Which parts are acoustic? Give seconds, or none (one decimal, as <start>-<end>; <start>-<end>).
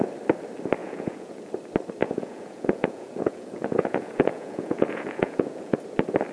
0.0-0.8; 1.5-2.0; 5.8-6.3